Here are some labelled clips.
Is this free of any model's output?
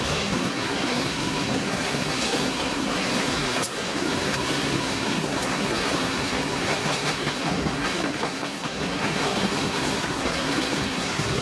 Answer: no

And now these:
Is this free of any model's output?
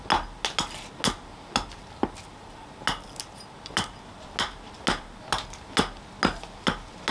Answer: yes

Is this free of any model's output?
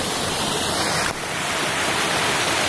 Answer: yes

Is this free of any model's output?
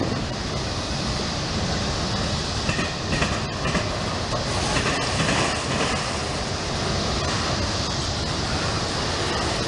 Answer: yes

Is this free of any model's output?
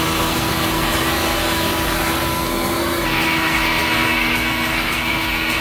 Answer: no